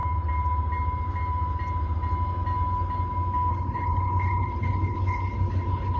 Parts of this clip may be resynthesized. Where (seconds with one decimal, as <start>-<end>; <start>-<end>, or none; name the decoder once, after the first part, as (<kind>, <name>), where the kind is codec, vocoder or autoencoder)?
3.5-6.0 (codec, HILCodec)